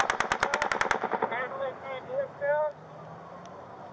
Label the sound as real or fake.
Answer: real